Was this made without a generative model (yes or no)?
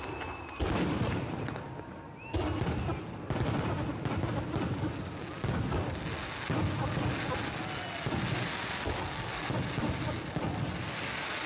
yes